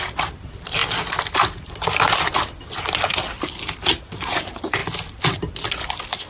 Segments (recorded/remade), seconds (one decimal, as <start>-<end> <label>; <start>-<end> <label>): 0.0-0.8 remade; 0.8-4.0 recorded; 4.0-4.8 remade; 4.8-6.3 recorded